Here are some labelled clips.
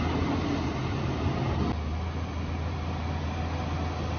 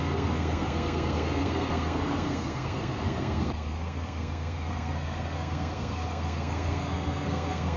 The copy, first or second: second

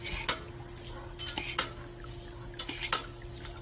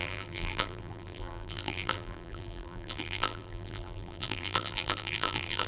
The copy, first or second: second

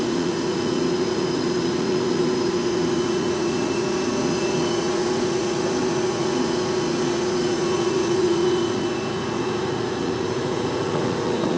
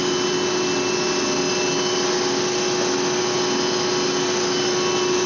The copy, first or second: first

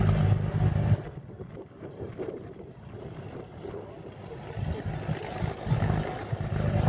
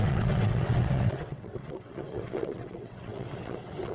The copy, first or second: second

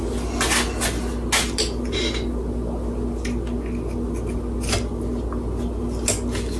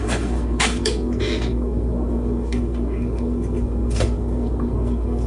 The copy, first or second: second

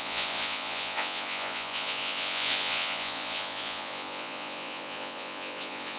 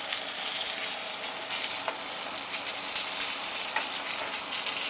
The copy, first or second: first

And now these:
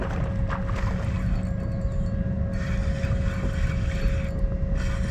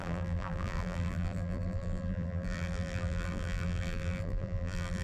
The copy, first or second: second